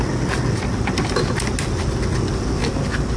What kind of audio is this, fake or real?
real